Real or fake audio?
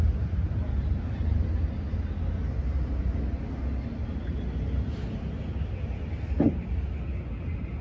real